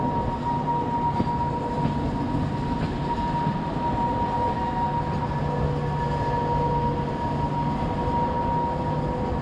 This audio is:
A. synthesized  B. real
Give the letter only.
B